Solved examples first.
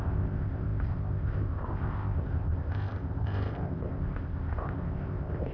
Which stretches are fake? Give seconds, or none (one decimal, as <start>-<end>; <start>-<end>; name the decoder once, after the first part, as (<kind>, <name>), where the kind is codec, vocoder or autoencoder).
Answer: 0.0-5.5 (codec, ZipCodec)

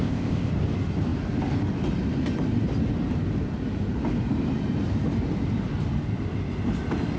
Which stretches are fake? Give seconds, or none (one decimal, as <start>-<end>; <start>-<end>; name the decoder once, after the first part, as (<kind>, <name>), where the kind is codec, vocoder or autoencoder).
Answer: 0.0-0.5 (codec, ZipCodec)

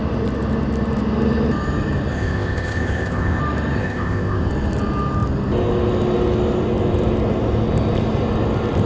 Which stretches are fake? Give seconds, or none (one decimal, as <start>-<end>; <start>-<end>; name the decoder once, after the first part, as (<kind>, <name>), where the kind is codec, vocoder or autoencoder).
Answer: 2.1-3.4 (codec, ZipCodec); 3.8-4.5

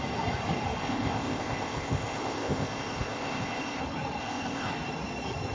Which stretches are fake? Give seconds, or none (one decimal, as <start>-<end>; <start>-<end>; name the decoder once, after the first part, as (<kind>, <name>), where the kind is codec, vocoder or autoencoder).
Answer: 0.8-3.8 (codec, ZipCodec); 4.2-4.7

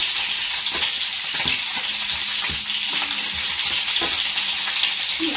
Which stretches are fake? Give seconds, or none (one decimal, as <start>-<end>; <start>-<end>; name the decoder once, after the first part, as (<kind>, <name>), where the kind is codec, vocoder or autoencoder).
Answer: none